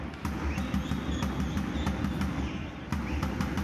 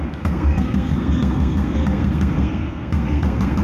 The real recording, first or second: first